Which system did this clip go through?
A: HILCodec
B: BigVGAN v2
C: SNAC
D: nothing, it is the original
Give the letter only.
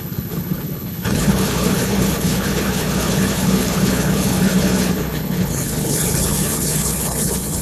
A